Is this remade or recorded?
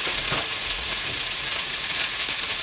remade